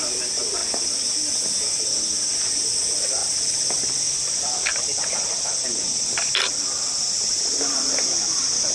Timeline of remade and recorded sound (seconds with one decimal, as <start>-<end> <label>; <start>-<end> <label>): 0.0-3.2 recorded; 3.2-8.0 remade; 8.0-8.7 recorded